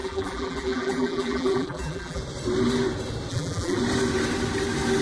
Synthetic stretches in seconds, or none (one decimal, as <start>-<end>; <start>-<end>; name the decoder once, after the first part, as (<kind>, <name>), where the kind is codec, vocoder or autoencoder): 0.0-2.2 (vocoder, BigVGAN v2); 3.3-3.8